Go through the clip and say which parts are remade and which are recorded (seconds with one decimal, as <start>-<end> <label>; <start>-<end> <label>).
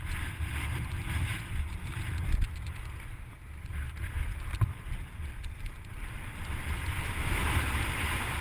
0.0-8.4 recorded